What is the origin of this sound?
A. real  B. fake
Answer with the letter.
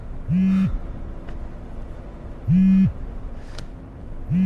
A